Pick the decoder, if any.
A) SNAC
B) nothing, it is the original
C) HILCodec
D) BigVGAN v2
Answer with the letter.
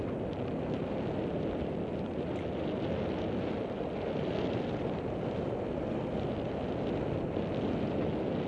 B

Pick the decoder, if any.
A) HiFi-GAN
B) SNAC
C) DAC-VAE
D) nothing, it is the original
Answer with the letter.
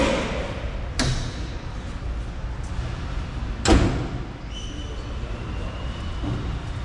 D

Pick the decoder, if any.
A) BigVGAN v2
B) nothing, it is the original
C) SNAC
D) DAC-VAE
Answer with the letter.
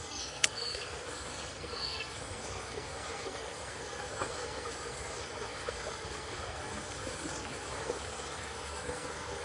C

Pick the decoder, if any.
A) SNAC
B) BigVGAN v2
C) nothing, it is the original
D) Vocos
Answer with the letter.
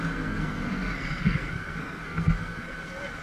A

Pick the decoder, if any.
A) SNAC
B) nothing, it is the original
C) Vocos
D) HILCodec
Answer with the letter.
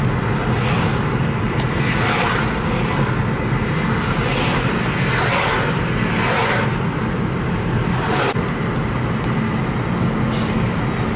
B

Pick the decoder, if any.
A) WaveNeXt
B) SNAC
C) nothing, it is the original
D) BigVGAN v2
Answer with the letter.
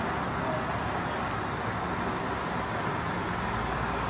C